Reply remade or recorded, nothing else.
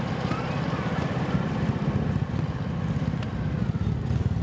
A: recorded